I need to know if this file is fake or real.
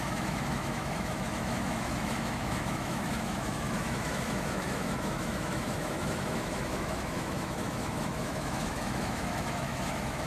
fake